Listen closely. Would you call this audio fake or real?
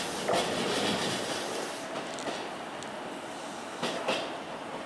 real